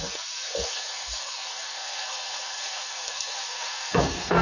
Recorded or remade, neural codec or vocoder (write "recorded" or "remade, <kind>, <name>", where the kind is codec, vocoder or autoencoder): remade, codec, SNAC